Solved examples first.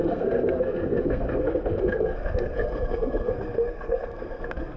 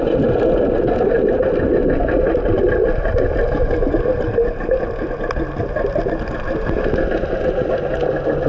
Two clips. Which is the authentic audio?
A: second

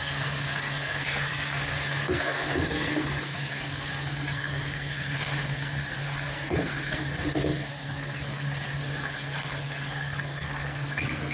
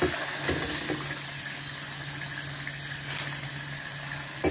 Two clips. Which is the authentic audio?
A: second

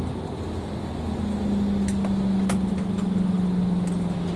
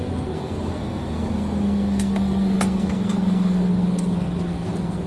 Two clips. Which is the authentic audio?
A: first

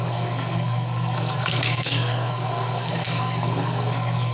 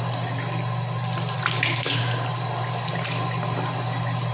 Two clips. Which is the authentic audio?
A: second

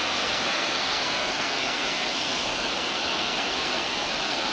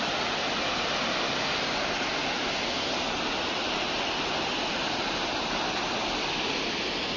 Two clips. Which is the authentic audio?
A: second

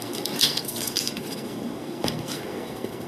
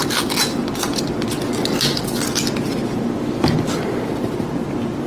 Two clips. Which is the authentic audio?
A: second